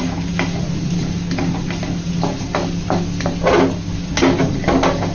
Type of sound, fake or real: real